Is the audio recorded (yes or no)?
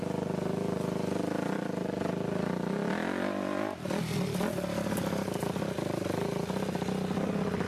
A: yes